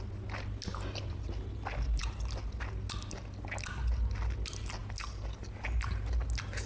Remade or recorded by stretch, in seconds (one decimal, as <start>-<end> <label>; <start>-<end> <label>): 0.0-6.7 recorded